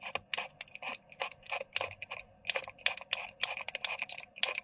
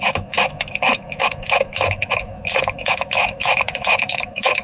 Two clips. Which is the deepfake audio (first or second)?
second